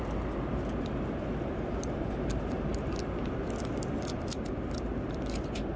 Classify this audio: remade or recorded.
recorded